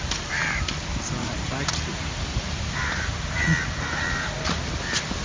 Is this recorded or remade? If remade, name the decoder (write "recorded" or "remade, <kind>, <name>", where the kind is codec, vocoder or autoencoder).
recorded